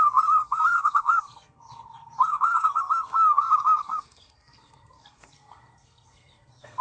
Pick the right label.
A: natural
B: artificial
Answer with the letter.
B